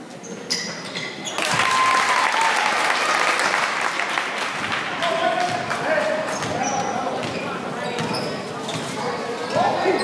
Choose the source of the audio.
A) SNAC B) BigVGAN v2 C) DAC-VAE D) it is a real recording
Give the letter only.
D